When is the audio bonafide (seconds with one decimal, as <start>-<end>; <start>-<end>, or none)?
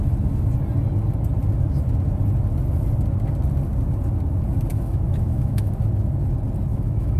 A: 0.0-4.7; 5.7-6.7